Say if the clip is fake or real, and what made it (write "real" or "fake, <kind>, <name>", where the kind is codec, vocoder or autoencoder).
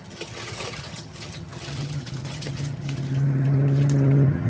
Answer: fake, vocoder, HiFi-GAN